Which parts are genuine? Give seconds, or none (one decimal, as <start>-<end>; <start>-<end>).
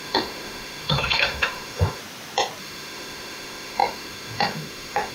2.0-2.6